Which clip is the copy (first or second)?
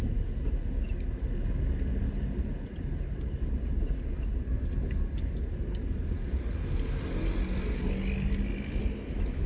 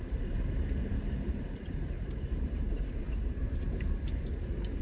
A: second